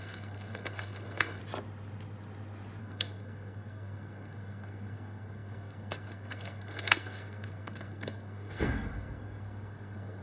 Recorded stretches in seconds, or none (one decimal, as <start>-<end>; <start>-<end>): 1.4-2.8